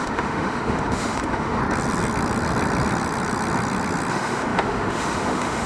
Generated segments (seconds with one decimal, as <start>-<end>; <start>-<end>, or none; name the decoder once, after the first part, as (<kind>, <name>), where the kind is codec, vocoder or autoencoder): 0.0-1.6 (autoencoder, DAC-VAE); 4.1-5.7